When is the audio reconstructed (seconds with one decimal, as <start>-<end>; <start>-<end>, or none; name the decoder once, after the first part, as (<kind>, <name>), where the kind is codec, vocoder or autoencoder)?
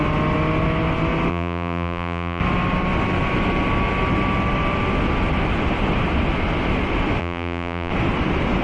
1.3-2.4 (vocoder, BigVGAN v2); 7.2-7.9